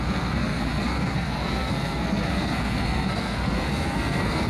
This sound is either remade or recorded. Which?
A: remade